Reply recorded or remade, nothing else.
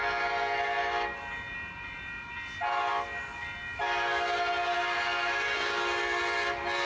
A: recorded